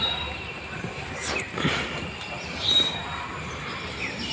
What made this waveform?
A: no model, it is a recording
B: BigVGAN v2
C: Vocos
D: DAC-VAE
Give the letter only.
A